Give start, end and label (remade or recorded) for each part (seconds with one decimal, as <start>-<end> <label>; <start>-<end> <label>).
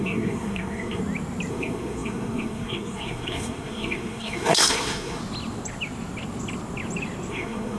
0.0-1.0 remade; 1.0-1.5 recorded; 1.5-5.2 remade; 5.2-7.3 recorded; 7.3-7.8 remade